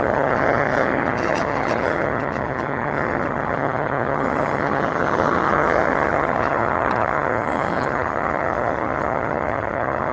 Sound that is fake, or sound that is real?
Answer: fake